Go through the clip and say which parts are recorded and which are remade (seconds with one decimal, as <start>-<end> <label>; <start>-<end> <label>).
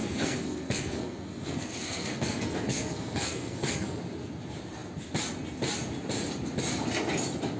0.0-4.0 remade; 4.0-7.6 recorded